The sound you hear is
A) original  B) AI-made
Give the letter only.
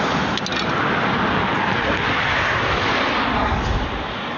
A